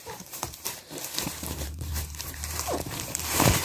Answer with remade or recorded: remade